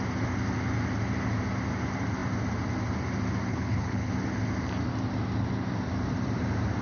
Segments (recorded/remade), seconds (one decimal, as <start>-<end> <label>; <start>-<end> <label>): 0.0-3.5 recorded; 3.5-4.1 remade; 4.1-6.8 recorded